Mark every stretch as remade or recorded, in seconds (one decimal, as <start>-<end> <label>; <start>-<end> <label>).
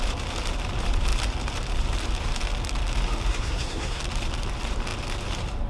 0.0-3.3 recorded; 3.3-4.0 remade; 4.0-5.7 recorded